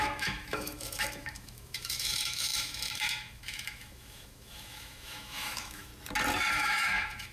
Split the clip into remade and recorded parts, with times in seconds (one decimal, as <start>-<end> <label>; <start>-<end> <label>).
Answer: 0.0-5.9 remade; 5.9-6.5 recorded; 6.5-7.3 remade